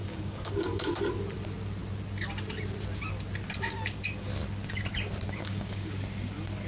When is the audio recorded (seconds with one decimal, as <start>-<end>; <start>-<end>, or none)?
0.9-5.4; 5.9-6.7